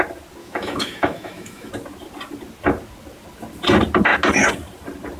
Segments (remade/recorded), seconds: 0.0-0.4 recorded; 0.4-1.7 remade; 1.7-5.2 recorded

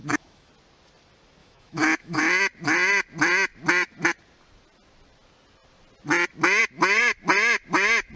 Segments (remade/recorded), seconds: 0.0-0.5 remade; 0.5-1.4 recorded; 1.4-2.2 remade; 2.2-8.2 recorded

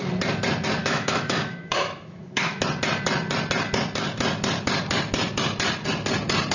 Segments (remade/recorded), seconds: 0.0-0.8 recorded; 0.8-2.6 remade; 2.6-6.5 recorded

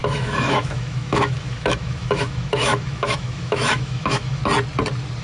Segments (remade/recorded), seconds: 0.0-4.4 remade; 4.4-5.2 recorded

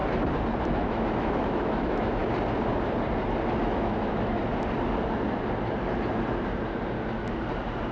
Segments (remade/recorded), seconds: 0.0-0.6 recorded; 0.6-2.2 remade; 2.2-3.6 recorded; 3.6-4.4 remade; 4.4-7.9 recorded